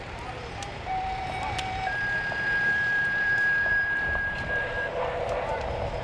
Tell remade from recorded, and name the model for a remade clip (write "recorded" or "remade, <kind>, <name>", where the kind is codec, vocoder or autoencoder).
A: remade, vocoder, BigVGAN v2